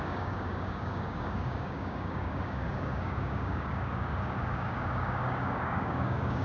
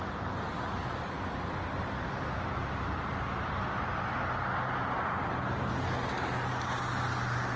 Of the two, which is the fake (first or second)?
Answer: first